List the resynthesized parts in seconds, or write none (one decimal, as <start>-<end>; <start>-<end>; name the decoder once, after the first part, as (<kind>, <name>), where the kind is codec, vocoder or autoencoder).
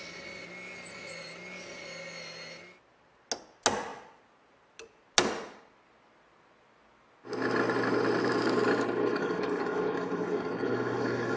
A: 9.1-11.4 (codec, DAC)